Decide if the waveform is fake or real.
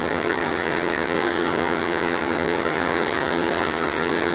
fake